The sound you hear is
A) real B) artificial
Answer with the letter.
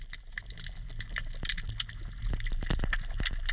A